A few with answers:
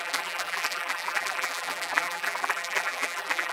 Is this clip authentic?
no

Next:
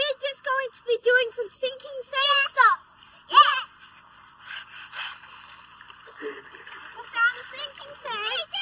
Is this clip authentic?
yes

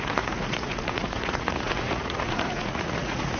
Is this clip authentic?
no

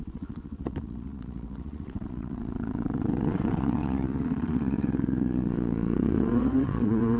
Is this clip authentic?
no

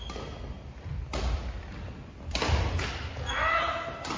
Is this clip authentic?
yes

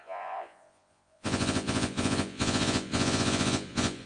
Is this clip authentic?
no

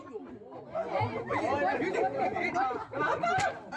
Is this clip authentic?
yes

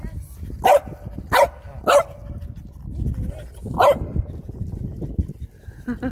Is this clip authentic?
yes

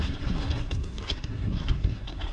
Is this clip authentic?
no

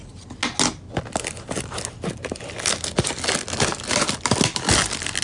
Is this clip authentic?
yes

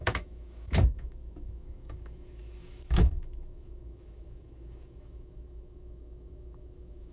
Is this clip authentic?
no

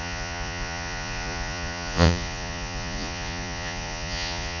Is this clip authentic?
no